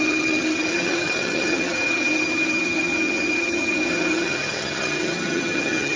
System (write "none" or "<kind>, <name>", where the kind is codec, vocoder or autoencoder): vocoder, HiFi-GAN